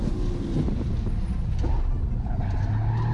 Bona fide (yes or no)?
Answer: yes